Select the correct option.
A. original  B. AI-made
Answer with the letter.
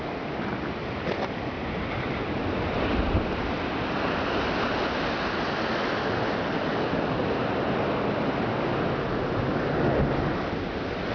A